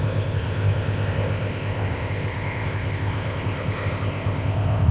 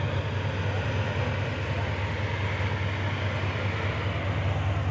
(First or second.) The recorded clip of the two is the second